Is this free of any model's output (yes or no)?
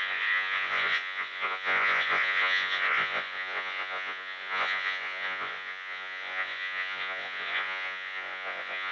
no